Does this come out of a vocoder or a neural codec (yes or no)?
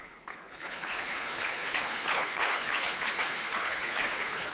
yes